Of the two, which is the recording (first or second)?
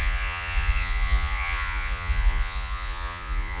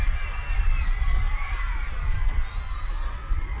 second